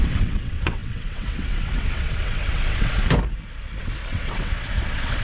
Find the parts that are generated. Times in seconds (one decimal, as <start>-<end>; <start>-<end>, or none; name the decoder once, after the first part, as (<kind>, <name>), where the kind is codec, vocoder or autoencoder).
0.0-3.0 (vocoder, WaveNeXt); 3.8-5.2